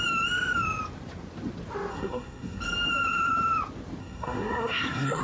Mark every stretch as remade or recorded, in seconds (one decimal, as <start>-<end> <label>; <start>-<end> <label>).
0.0-1.9 recorded; 1.9-2.6 remade; 2.6-4.0 recorded; 4.0-5.2 remade